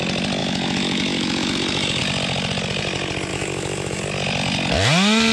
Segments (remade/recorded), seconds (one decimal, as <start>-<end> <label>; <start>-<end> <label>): 0.0-0.4 recorded; 0.4-2.0 remade; 2.0-3.3 recorded; 3.3-4.0 remade; 4.0-5.3 recorded